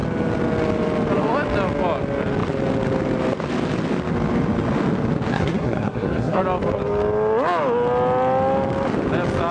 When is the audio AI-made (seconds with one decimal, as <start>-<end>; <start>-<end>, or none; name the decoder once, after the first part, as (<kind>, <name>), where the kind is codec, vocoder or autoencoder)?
5.3-6.4 (codec, SNAC)